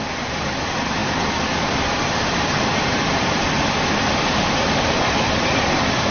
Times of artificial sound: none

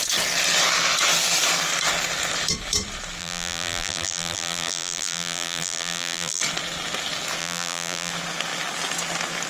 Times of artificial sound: 3.2-6.4; 7.4-8.1

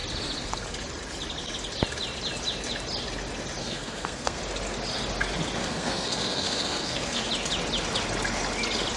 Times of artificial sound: 3.6-4.4; 5.6-7.3

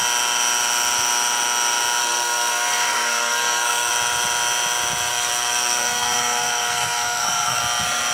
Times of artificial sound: 2.0-3.9; 5.1-7.6

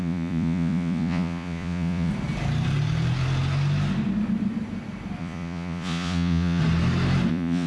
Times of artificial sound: 0.0-2.1; 5.2-6.6; 7.3-7.7

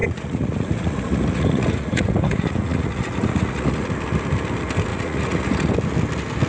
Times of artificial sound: 0.0-3.9; 4.9-5.7

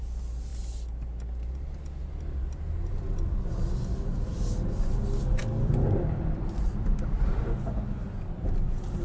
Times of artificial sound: 5.4-7.3

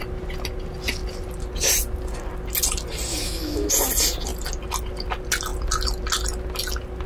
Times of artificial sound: 3.1-3.7